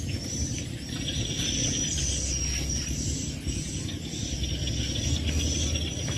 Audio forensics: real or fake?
real